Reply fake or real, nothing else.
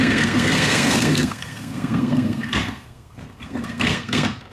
fake